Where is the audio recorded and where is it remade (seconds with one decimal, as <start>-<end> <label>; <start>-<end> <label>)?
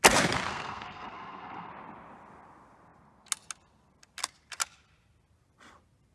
0.0-0.5 recorded; 0.5-1.7 remade; 1.7-6.1 recorded